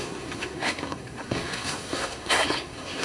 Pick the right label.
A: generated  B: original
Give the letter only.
A